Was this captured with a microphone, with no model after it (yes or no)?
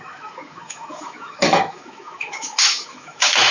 no